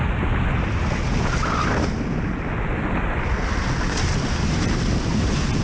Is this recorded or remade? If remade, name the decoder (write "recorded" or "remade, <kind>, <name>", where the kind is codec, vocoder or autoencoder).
recorded